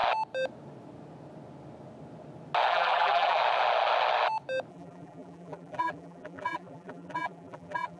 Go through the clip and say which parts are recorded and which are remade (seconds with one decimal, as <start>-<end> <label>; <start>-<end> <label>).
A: 0.0-2.7 recorded; 2.7-3.4 remade; 3.4-4.7 recorded; 4.7-8.0 remade

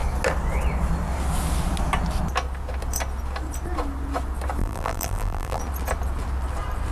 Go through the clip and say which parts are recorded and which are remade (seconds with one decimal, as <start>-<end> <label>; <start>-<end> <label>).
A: 0.0-4.6 recorded; 4.6-5.6 remade; 5.6-6.9 recorded